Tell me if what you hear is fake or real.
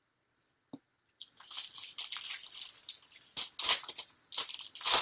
real